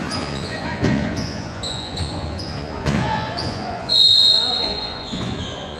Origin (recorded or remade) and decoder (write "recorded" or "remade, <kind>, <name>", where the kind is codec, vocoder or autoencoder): remade, vocoder, Vocos